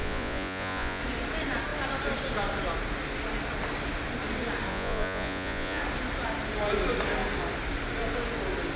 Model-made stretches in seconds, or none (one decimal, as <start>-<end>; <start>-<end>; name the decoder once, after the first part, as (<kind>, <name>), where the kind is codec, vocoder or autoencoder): 0.0-1.0 (vocoder, Vocos); 4.7-5.8